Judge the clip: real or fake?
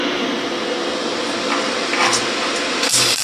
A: real